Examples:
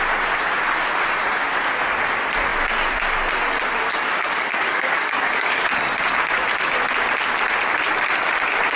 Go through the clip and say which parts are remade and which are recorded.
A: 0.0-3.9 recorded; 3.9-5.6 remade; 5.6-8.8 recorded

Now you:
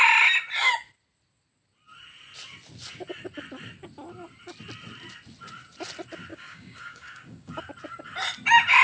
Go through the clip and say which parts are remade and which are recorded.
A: 0.0-6.3 recorded; 6.3-7.6 remade; 7.6-8.8 recorded

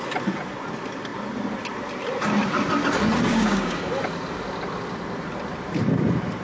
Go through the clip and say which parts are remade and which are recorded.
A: 0.0-3.3 recorded; 3.3-3.9 remade; 3.9-6.4 recorded

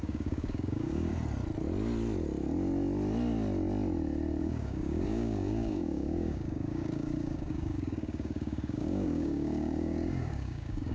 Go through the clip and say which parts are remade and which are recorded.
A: 0.0-1.1 remade; 1.1-4.4 recorded; 4.4-10.9 remade